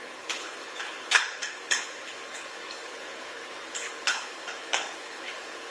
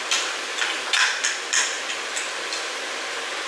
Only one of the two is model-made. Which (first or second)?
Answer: first